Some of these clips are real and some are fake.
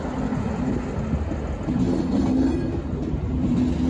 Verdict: real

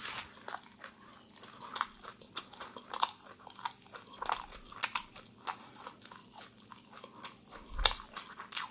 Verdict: real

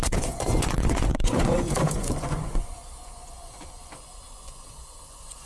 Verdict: fake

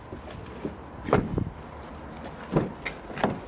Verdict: real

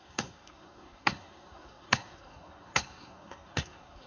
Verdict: fake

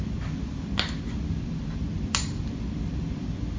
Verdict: real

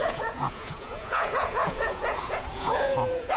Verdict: fake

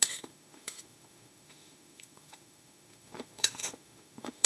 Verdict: fake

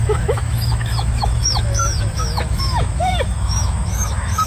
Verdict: fake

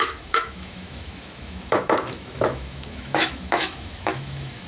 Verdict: fake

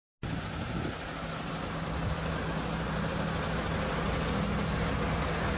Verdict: real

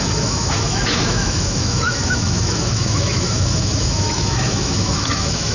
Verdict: fake